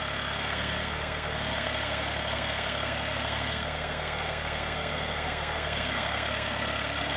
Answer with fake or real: fake